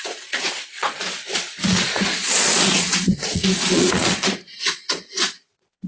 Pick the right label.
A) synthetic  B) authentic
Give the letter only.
A